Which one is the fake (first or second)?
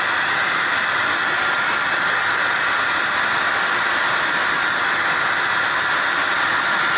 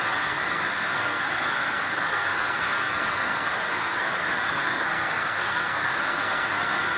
second